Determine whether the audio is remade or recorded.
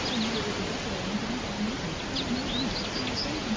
recorded